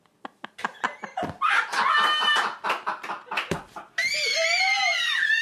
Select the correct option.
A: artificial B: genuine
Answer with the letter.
B